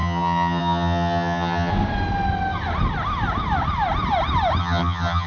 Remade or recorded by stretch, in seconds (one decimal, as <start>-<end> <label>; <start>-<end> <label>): 0.0-1.7 remade; 1.7-4.6 recorded; 4.6-5.3 remade